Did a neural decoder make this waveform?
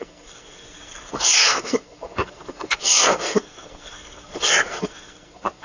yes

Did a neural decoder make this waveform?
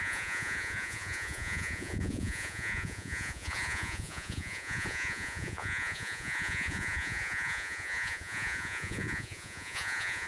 yes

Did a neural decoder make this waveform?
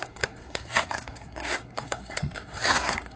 yes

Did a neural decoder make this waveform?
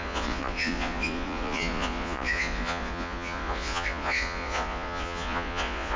yes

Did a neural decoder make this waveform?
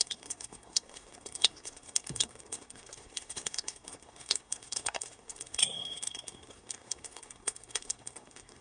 yes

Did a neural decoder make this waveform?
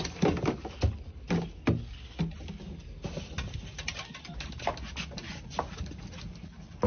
no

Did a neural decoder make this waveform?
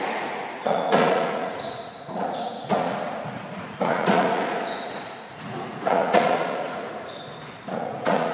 yes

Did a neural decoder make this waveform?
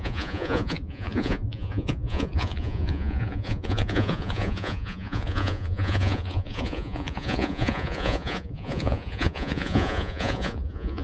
yes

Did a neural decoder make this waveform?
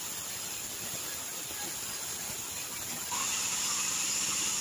no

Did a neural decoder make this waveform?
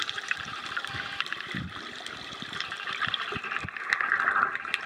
yes